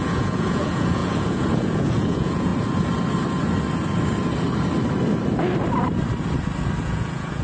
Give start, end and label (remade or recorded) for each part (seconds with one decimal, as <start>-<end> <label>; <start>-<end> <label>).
0.0-2.5 remade; 2.5-6.8 recorded; 6.8-7.4 remade

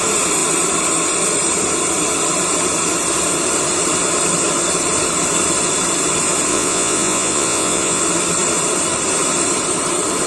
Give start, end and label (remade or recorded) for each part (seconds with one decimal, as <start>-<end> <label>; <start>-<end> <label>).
0.0-6.5 recorded; 6.5-8.0 remade; 8.0-10.3 recorded

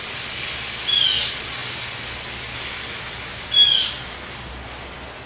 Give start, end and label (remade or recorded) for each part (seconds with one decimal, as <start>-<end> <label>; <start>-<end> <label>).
0.0-5.3 recorded

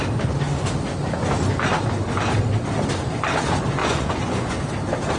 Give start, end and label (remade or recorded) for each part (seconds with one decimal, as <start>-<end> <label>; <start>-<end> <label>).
0.0-3.8 recorded; 3.8-4.6 remade; 4.6-5.2 recorded

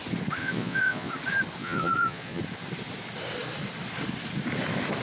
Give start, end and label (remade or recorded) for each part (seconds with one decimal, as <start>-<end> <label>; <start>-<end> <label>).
0.0-0.4 recorded; 0.4-1.1 remade; 1.1-1.6 recorded; 1.6-2.4 remade; 2.4-5.0 recorded